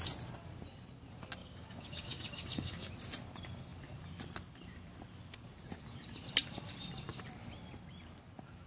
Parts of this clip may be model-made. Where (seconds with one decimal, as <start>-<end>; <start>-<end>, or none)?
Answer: 1.4-2.9